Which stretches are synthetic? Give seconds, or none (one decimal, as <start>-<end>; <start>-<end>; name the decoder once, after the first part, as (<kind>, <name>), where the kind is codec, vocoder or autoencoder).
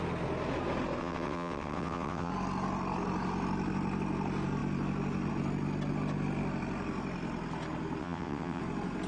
1.0-2.3 (vocoder, WaveNeXt); 8.0-8.6